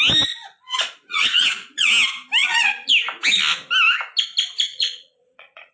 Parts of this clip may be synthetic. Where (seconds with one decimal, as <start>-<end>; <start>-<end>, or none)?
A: 0.4-1.9; 2.4-2.9; 4.7-5.7